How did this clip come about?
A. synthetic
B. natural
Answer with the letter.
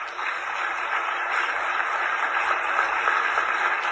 B